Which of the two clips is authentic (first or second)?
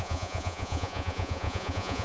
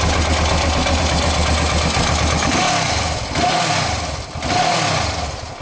second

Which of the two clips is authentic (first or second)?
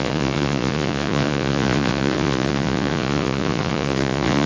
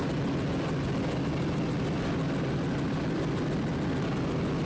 second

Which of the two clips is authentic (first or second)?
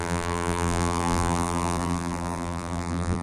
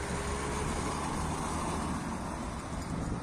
second